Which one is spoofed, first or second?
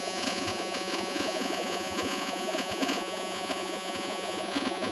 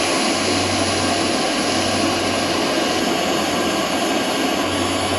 first